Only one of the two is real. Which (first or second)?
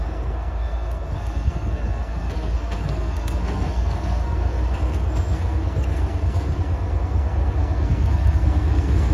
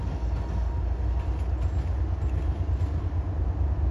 second